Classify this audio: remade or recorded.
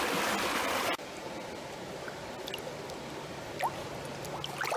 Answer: recorded